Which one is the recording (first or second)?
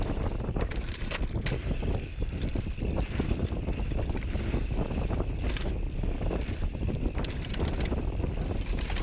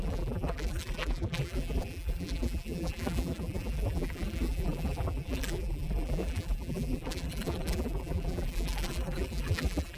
first